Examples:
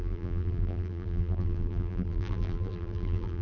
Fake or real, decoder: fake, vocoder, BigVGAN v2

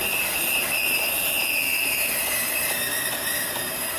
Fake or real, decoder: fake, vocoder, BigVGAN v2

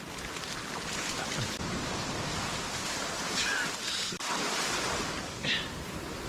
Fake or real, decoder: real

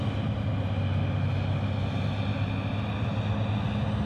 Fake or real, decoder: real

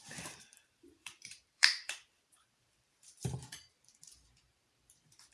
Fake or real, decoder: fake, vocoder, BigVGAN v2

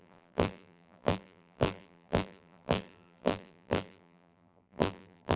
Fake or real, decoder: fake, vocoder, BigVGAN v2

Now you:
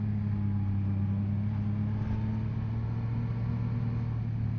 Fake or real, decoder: real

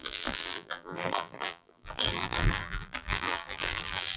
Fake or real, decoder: fake, vocoder, BigVGAN v2